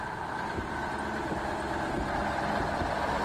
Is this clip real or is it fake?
real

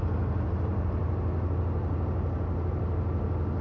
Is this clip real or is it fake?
real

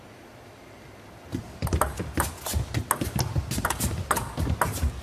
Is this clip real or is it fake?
real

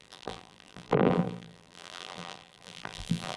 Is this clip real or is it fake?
fake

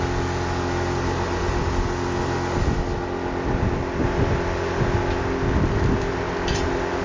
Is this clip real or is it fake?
real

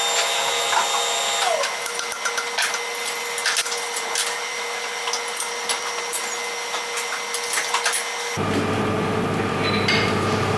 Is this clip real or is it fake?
real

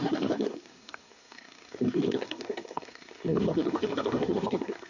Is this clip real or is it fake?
fake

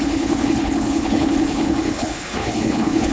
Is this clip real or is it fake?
fake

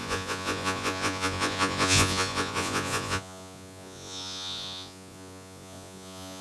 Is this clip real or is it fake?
fake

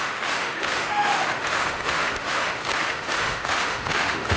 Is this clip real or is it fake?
fake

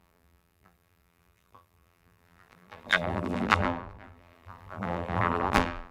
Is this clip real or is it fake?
fake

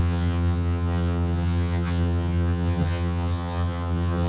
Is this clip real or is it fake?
fake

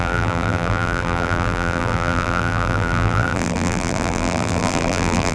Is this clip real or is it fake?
fake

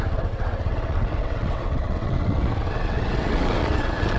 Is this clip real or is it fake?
fake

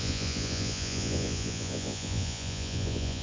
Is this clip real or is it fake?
fake